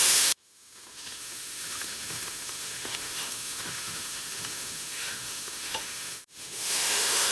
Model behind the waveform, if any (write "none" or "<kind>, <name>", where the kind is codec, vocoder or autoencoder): autoencoder, DAC-VAE